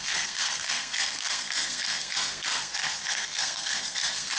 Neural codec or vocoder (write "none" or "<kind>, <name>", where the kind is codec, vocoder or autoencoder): codec, SNAC